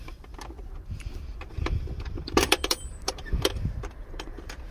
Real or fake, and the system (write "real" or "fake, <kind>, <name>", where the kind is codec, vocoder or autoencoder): fake, vocoder, BigVGAN v2